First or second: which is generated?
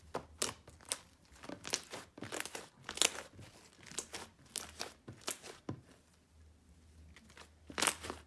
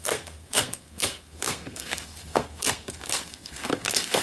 second